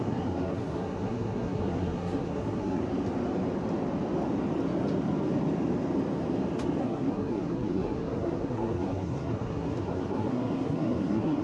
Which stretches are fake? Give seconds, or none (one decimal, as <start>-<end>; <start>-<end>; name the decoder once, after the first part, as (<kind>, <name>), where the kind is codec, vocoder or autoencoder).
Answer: 0.0-2.8 (codec, SNAC); 6.8-11.4